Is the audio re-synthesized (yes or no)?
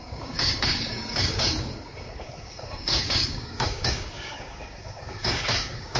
yes